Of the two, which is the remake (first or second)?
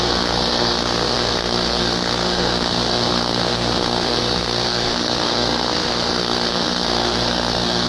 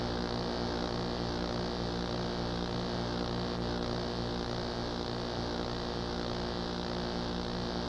first